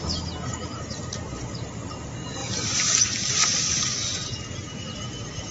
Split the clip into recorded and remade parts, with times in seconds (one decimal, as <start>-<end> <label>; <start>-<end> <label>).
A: 0.0-5.5 recorded